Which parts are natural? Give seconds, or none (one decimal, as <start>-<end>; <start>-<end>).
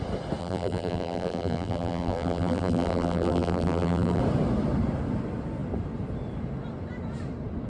0.0-0.4; 4.2-7.7